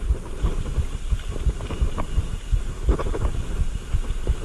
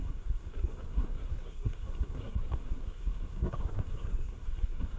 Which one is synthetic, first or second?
second